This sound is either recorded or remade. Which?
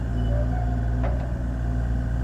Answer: recorded